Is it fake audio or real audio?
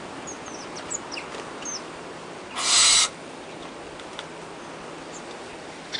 real